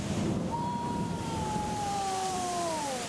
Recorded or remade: remade